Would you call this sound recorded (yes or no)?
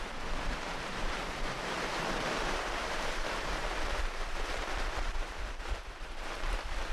no